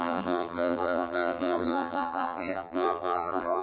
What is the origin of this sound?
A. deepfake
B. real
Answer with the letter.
A